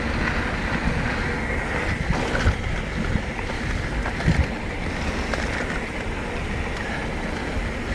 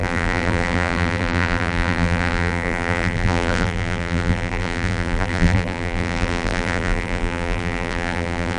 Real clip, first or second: first